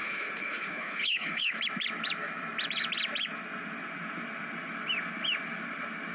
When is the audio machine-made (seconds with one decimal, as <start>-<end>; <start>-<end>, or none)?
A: 0.0-1.6